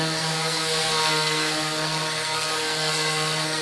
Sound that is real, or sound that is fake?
fake